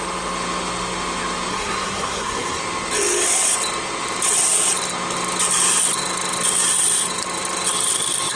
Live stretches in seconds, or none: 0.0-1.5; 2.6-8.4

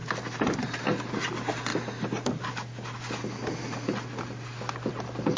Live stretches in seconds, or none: 0.0-5.4

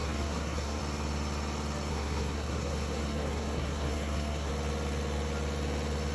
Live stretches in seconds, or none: 0.8-1.9; 4.5-6.1

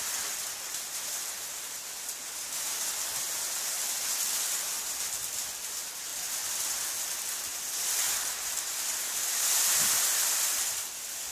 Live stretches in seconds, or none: 0.0-11.3

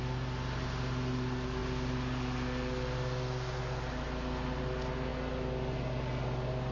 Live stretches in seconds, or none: 0.0-6.7